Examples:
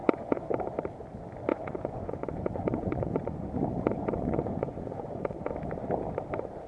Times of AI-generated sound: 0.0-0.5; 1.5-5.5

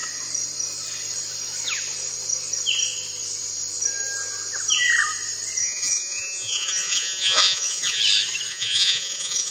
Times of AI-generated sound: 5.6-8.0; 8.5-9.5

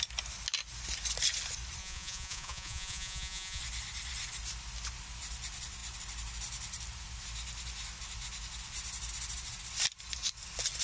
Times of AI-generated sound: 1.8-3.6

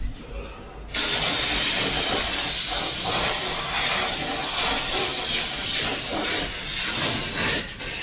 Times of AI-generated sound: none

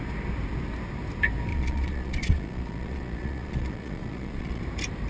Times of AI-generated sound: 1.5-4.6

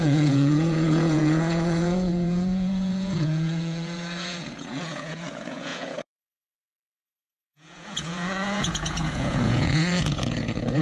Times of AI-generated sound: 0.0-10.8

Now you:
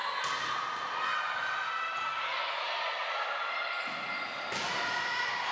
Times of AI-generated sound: none